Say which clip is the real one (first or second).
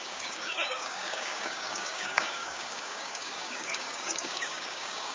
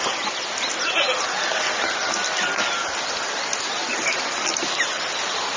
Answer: second